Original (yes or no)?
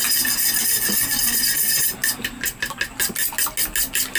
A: yes